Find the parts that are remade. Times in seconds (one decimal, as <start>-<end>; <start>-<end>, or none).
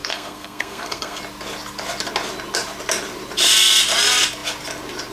0.0-1.2